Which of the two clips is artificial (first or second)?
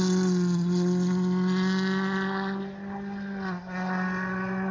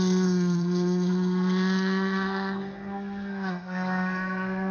second